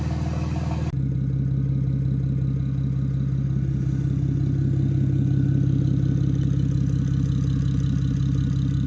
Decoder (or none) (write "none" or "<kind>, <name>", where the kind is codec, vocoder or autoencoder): none